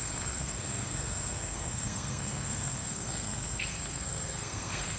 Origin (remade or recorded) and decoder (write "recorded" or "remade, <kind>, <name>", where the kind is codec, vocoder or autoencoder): remade, codec, SNAC